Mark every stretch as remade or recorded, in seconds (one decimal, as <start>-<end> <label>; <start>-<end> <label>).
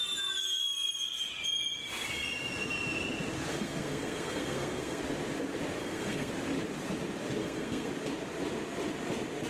0.0-3.5 recorded; 3.5-5.0 remade; 5.0-5.8 recorded; 5.8-6.3 remade; 6.3-7.4 recorded; 7.4-7.9 remade; 7.9-9.5 recorded